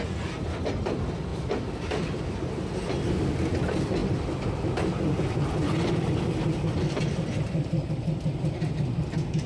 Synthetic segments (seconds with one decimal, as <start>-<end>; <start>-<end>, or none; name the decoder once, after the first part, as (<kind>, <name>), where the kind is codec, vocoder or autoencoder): 1.3-2.3 (vocoder, BigVGAN v2); 4.0-7.9